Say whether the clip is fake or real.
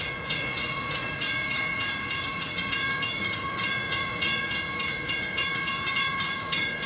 fake